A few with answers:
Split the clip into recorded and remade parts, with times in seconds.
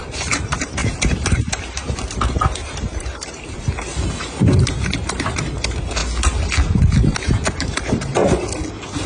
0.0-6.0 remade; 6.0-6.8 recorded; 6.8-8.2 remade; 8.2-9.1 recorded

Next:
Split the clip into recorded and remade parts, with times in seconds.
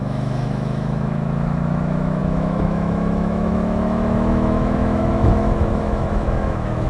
0.0-6.9 remade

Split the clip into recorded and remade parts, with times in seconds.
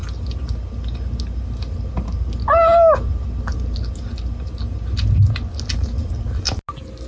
0.0-7.1 recorded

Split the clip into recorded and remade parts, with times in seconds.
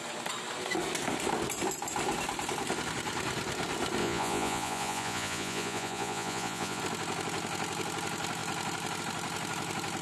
0.0-4.0 recorded; 4.0-6.8 remade; 6.8-10.0 recorded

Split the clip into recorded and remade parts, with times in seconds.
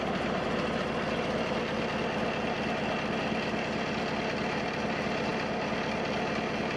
0.0-6.8 recorded